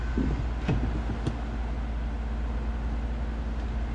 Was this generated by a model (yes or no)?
no